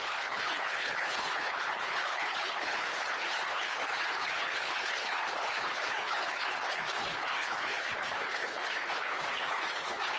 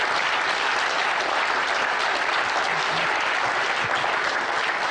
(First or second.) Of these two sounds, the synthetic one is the first